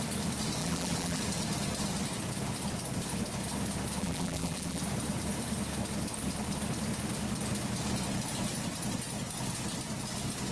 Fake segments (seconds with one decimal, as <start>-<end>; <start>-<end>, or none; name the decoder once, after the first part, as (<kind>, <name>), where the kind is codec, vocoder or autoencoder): 0.6-1.2 (vocoder, BigVGAN v2); 4.0-4.8